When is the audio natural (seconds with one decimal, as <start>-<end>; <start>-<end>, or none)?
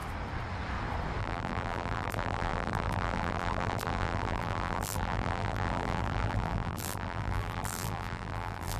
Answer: 0.0-1.2